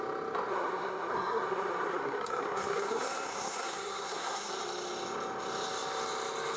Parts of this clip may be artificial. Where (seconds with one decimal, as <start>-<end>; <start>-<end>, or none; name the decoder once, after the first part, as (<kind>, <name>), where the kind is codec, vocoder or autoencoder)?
0.5-4.5 (codec, SNAC)